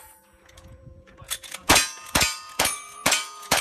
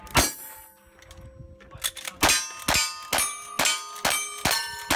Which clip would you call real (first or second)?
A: second